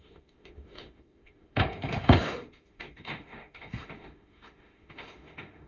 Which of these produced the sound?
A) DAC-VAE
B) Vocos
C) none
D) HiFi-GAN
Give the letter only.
A